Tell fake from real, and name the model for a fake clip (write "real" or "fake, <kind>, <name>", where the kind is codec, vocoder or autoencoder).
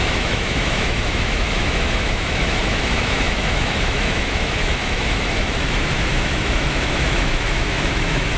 fake, autoencoder, DAC-VAE